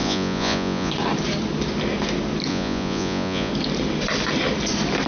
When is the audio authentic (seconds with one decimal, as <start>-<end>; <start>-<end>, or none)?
0.9-2.5; 3.5-5.1